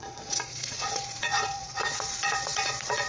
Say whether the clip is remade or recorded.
remade